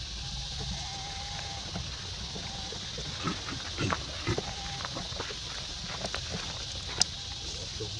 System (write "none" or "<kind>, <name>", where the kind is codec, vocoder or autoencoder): none